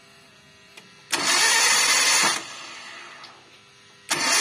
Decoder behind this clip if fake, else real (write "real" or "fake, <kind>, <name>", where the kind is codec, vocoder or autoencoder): real